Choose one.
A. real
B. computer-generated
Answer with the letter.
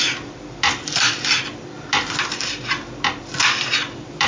B